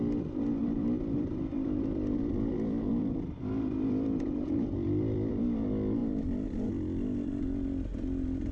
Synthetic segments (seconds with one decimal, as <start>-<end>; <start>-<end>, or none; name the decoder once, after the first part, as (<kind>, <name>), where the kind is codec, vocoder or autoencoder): 0.6-5.3 (vocoder, BigVGAN v2)